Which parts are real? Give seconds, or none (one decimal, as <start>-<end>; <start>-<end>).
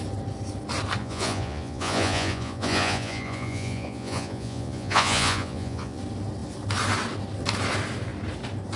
0.0-1.0; 6.0-8.8